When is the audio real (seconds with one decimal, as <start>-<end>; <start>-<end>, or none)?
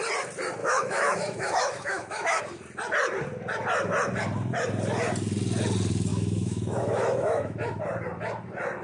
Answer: 0.0-0.6; 2.4-6.1; 7.8-8.8